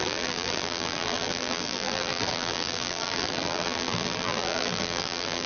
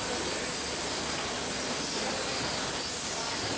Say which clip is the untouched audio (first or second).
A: second